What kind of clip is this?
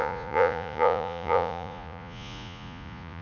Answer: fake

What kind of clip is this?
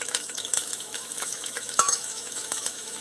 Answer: fake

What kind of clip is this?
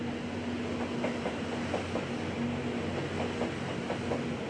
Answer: real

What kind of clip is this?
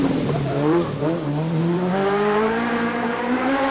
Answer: fake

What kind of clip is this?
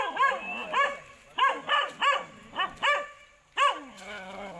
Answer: real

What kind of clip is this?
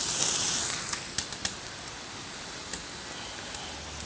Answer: real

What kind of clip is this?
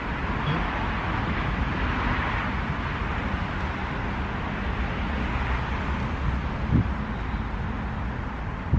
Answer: real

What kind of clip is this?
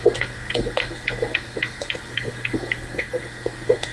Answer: fake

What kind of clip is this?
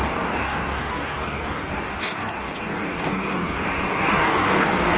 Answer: fake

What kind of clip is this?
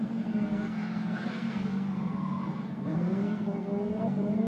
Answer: fake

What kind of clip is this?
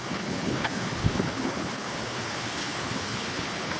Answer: fake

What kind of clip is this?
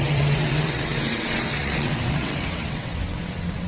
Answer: fake